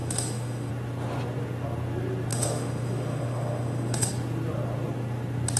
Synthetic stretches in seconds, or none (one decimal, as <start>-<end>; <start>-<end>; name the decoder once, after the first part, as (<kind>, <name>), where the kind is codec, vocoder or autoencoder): 0.0-0.7 (autoencoder, DAC-VAE); 2.3-4.1